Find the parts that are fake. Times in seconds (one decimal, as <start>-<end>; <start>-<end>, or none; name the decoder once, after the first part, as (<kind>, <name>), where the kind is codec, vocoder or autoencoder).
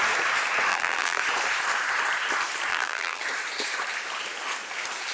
0.7-1.2 (vocoder, BigVGAN v2); 2.7-3.2